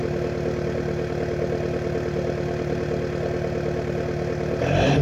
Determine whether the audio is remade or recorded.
recorded